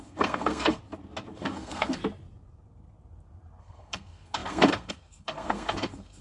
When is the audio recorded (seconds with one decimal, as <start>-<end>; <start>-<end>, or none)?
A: 0.8-1.3; 2.0-3.6